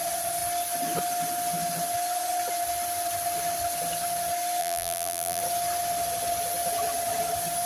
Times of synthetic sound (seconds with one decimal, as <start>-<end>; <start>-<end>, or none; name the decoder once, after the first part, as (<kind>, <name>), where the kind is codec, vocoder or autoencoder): 4.6-5.4 (vocoder, BigVGAN v2)